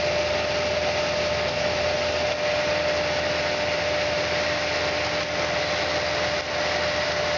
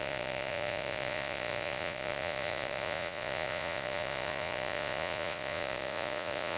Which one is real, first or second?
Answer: first